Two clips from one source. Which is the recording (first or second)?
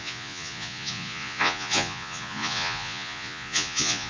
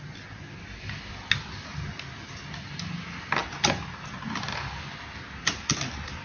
second